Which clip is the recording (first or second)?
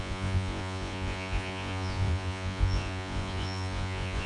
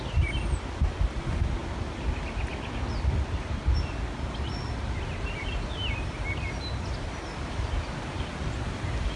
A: second